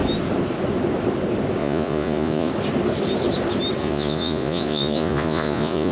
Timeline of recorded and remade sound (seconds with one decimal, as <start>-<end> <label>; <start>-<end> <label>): 0.0-1.6 recorded; 1.6-2.5 remade; 2.5-3.8 recorded; 3.8-5.9 remade